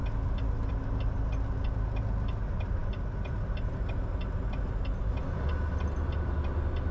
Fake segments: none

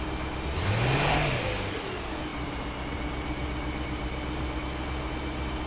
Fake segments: none

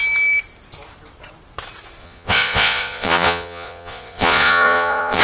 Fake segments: 2.0-5.2 (vocoder, Vocos)

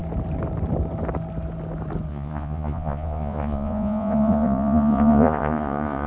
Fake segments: 2.1-6.1 (vocoder, Vocos)

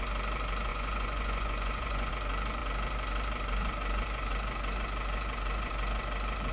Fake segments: 0.7-2.1 (vocoder, Vocos)